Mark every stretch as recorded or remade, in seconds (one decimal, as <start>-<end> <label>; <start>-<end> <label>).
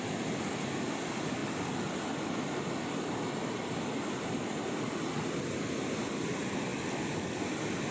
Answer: 0.0-7.9 recorded